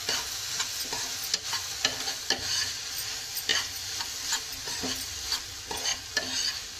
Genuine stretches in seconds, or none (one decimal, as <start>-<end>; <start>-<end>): 0.0-6.8

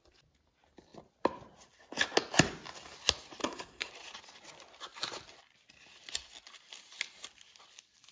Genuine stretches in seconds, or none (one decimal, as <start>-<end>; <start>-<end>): 0.0-3.4; 3.9-8.1

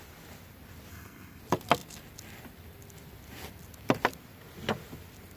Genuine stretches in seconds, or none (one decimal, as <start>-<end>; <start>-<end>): 0.0-0.9; 1.4-5.4

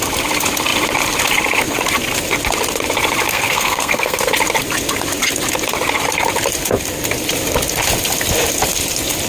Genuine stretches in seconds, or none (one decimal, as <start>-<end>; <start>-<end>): 0.0-3.3; 4.3-9.3

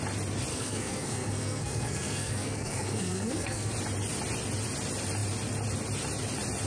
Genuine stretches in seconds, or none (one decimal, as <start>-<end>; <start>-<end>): 0.0-0.5; 3.7-6.7

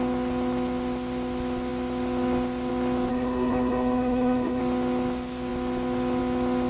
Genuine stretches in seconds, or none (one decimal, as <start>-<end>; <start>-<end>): 0.0-3.1; 4.6-6.7

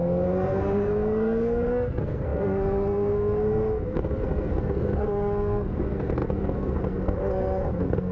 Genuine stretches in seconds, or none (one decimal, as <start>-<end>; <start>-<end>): none

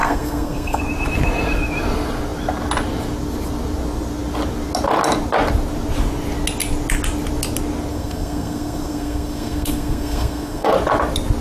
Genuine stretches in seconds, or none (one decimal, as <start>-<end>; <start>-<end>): 0.8-7.9; 10.7-11.4